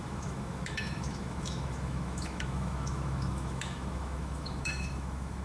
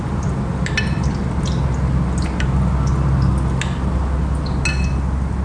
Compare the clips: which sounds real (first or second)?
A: second